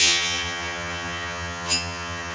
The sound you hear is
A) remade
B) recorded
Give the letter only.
A